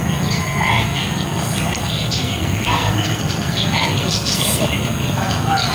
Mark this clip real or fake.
fake